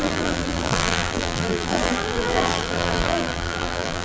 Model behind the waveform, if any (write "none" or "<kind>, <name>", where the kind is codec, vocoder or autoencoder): vocoder, BigVGAN v2